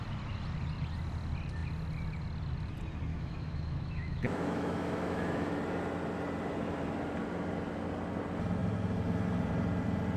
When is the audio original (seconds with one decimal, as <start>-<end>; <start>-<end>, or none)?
0.0-3.1; 5.5-10.2